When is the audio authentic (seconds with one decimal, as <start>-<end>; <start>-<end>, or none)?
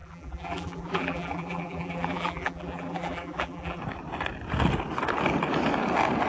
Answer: 3.8-6.3